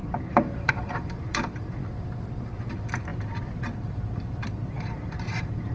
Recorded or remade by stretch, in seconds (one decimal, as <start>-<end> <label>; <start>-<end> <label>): 0.0-1.8 remade; 1.8-2.7 recorded; 2.7-5.7 remade